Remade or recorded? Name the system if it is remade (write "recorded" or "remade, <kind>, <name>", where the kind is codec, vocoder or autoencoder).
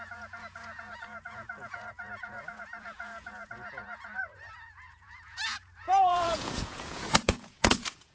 remade, vocoder, Vocos